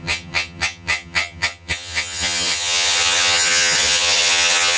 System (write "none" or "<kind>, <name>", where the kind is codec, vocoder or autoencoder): vocoder, HiFi-GAN